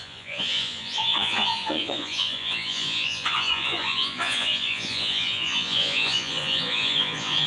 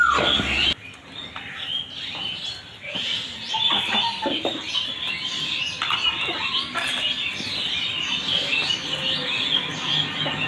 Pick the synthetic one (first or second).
first